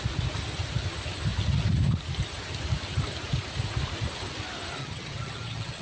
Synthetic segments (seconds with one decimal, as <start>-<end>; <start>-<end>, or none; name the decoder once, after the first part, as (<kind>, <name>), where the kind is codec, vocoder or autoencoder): 4.8-5.8 (vocoder, HiFi-GAN)